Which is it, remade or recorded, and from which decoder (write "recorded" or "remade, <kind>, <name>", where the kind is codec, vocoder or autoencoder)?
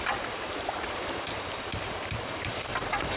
remade, vocoder, BigVGAN v2